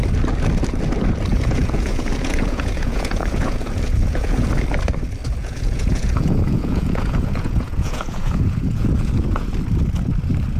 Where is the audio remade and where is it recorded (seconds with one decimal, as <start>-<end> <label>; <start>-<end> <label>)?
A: 0.0-1.3 recorded; 1.3-4.5 remade; 4.5-5.4 recorded; 5.4-9.5 remade; 9.5-10.6 recorded